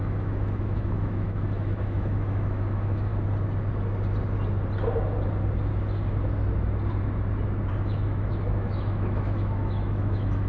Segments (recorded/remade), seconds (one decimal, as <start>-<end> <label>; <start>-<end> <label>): 0.0-3.1 remade; 3.1-7.7 recorded; 7.7-10.5 remade